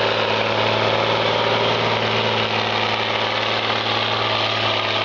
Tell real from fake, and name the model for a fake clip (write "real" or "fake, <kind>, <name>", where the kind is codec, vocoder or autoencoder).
real